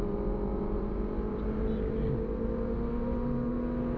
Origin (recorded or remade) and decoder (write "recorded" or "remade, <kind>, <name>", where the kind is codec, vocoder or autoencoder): recorded